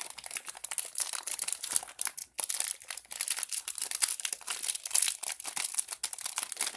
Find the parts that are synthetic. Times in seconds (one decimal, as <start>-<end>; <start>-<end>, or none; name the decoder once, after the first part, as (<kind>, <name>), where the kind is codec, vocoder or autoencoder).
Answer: none